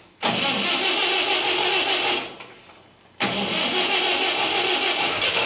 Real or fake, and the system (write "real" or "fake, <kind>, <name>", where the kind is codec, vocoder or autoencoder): real